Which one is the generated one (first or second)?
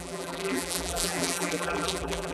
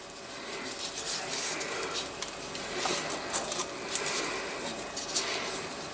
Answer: first